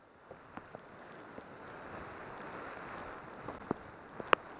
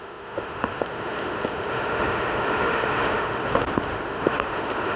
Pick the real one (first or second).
first